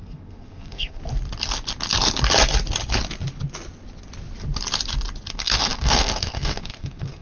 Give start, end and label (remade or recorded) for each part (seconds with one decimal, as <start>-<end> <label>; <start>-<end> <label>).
0.0-1.0 remade; 1.0-5.3 recorded; 5.3-7.2 remade